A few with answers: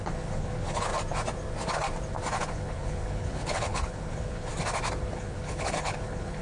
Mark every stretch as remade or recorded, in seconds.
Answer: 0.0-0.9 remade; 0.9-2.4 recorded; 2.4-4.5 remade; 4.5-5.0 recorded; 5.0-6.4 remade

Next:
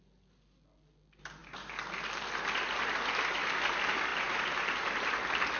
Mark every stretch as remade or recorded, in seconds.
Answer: 0.0-5.6 recorded

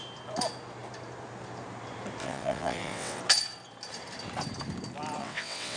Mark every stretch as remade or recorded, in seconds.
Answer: 0.0-2.2 recorded; 2.2-3.2 remade; 3.2-5.2 recorded; 5.2-5.8 remade

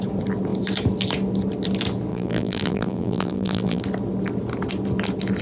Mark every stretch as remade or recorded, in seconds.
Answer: 0.0-2.1 recorded; 2.1-3.8 remade; 3.8-5.4 recorded

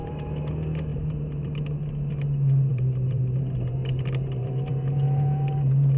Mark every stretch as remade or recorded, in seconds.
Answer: 0.0-0.5 remade; 0.5-0.9 recorded; 0.9-1.9 remade; 1.9-2.7 recorded; 2.7-6.0 remade